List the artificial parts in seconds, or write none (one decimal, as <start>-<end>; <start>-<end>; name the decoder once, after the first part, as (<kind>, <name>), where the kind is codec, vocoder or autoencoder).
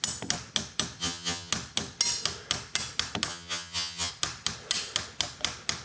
1.0-1.5 (vocoder, HiFi-GAN); 3.3-4.1